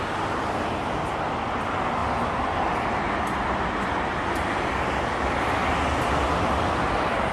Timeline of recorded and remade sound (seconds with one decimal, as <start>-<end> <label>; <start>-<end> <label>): 0.0-7.3 recorded